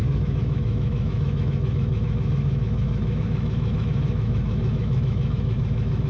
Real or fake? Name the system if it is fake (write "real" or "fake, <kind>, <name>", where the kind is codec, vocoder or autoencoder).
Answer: fake, autoencoder, DAC-VAE